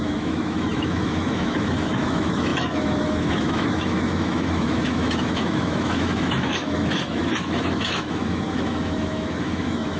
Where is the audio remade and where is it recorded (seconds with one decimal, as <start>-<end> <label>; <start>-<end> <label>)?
0.0-10.0 remade